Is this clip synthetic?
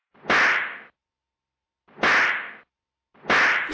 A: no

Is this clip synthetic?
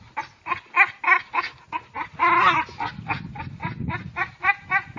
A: no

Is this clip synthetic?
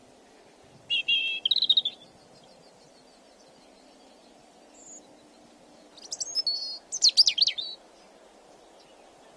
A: no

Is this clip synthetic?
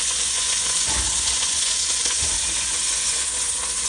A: yes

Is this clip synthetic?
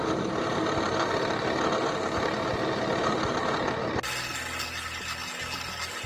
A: no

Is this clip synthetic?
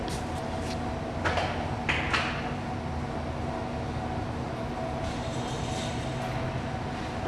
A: no